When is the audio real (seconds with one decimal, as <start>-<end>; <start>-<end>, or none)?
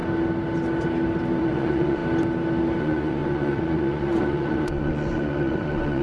0.0-1.4; 2.0-2.8